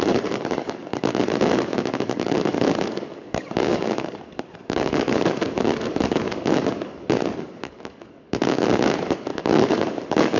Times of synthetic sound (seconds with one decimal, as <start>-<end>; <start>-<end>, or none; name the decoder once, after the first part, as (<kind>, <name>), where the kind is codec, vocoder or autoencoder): 0.0-10.4 (codec, DAC)